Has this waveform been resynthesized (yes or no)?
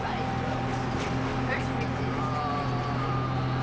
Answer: no